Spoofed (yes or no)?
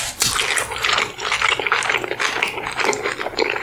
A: no